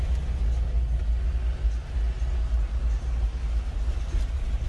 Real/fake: real